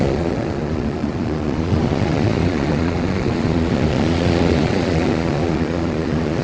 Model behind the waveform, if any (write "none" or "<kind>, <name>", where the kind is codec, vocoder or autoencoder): vocoder, Vocos